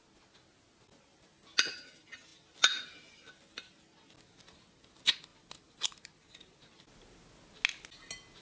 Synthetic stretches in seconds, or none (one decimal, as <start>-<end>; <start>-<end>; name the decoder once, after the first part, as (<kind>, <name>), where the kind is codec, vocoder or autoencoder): none